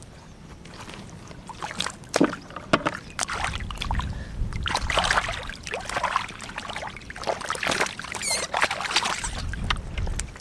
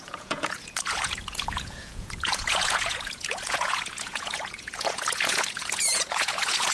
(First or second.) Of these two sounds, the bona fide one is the first